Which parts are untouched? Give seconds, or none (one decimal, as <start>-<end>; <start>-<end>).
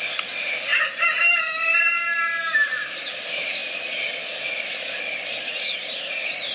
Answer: 3.6-5.5